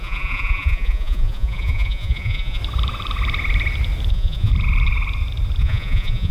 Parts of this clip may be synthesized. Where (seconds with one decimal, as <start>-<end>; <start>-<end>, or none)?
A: 0.0-2.6; 4.1-4.5; 5.6-6.3